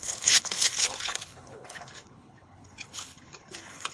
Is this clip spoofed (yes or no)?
yes